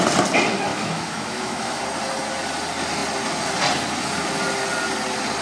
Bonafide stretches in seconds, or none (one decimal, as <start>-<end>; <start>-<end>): 0.0-0.7; 1.8-5.4